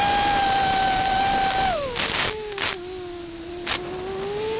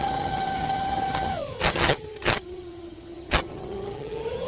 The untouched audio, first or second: first